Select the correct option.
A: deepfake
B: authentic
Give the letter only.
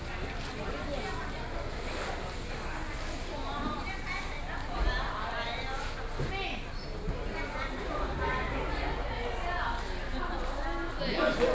B